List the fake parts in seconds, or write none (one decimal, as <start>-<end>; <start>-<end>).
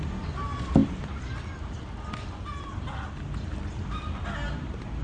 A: none